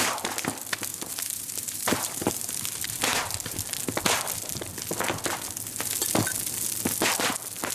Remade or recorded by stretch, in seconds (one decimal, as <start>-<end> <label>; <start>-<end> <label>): 0.0-0.9 recorded; 0.9-3.0 remade; 3.0-7.7 recorded